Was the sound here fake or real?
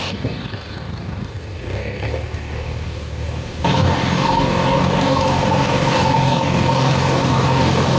fake